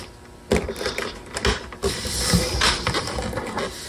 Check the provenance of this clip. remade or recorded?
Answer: recorded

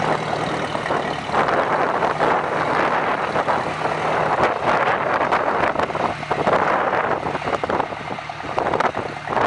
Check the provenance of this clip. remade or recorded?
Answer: recorded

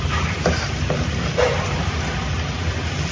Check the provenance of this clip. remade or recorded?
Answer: recorded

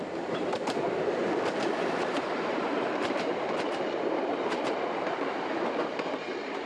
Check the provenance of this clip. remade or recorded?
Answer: remade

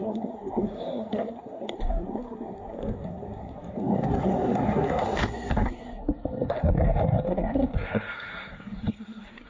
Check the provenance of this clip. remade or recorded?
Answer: remade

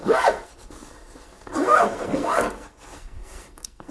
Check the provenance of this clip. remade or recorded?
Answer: remade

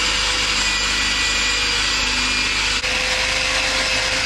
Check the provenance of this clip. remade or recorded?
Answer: recorded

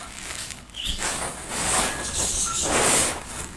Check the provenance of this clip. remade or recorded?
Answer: remade